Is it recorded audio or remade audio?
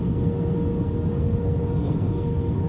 remade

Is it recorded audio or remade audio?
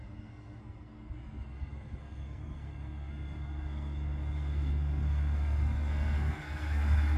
remade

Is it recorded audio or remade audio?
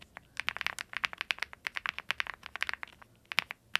recorded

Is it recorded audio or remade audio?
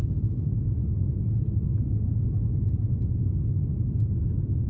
recorded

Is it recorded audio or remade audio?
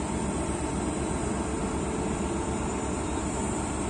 recorded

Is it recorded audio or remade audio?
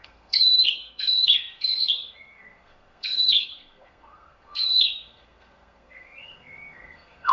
remade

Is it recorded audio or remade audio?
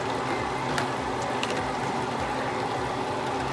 recorded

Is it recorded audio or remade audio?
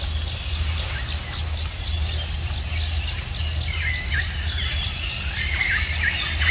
recorded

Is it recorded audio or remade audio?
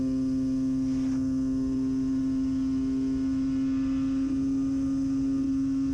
recorded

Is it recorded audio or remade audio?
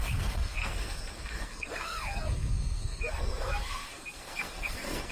remade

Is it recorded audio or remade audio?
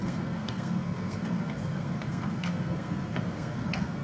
remade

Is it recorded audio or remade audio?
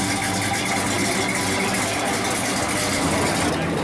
recorded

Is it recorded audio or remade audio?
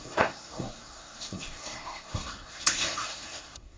remade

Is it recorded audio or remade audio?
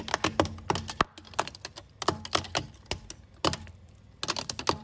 recorded